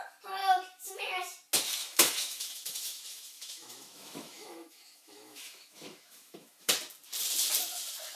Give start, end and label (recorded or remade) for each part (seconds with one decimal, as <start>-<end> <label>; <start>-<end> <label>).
0.0-0.4 recorded; 0.4-1.0 remade; 1.0-1.8 recorded; 1.8-6.7 remade; 6.7-8.1 recorded